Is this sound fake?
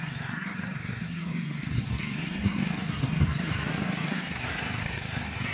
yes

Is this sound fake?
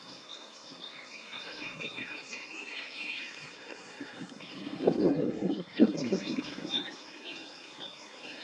yes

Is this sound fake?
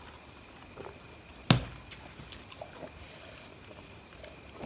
no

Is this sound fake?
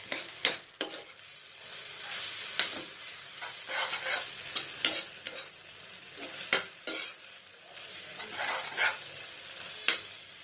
no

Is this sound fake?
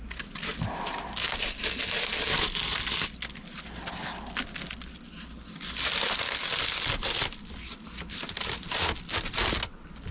no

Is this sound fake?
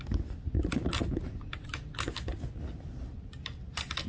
no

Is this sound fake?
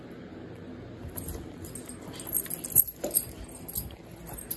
no